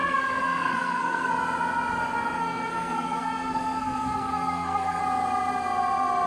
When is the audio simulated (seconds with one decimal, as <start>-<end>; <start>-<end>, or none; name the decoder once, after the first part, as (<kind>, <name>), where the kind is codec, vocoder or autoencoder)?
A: 0.0-1.3 (codec, SNAC); 2.0-5.0